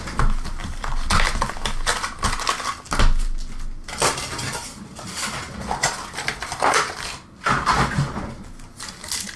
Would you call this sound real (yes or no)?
yes